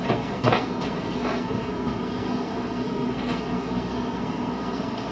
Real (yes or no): no